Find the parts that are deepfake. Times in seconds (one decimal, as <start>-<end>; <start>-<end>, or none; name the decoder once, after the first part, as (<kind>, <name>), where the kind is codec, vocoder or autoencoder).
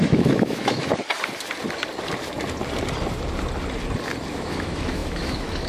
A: 0.0-0.9 (autoencoder, DAC-VAE); 4.3-5.7